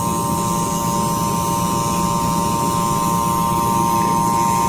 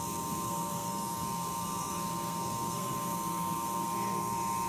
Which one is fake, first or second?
second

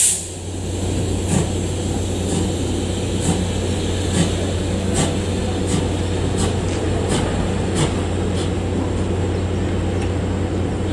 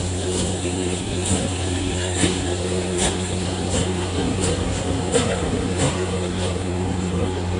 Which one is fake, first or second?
second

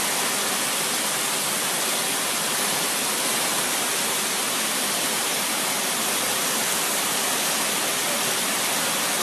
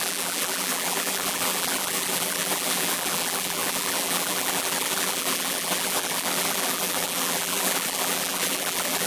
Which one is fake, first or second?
second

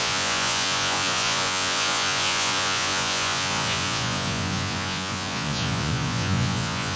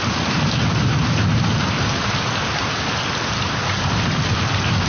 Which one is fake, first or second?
first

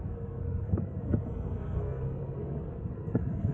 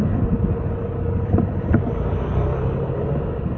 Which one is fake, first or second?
first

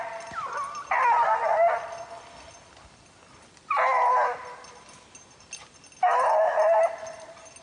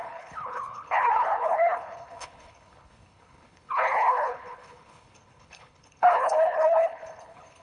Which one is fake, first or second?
second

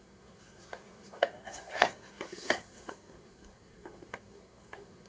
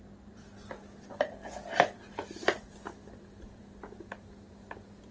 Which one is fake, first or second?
first